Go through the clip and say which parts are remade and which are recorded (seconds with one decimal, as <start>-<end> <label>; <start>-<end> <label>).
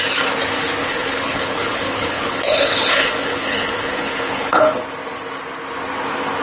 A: 0.0-0.8 recorded; 0.8-4.6 remade; 4.6-6.4 recorded